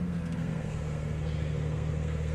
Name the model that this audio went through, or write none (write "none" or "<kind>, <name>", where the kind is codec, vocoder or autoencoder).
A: codec, SNAC